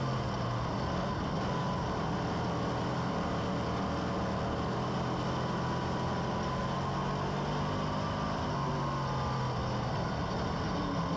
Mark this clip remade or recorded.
recorded